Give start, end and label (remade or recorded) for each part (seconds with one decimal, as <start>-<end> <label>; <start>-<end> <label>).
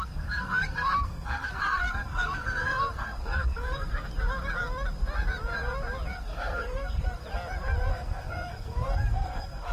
0.0-4.1 remade; 4.1-6.1 recorded; 6.1-7.2 remade; 7.2-7.9 recorded; 7.9-9.7 remade